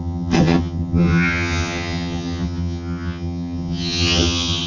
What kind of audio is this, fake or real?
fake